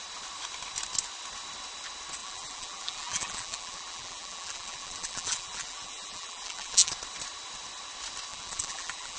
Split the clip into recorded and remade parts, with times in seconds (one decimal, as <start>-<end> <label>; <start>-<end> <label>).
0.0-2.2 recorded; 2.2-6.9 remade; 6.9-8.3 recorded; 8.3-9.2 remade